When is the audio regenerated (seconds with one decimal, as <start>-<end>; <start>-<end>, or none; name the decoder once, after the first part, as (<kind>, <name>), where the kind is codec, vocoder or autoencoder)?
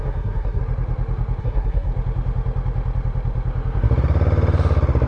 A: 0.0-0.6 (codec, SNAC); 1.4-1.9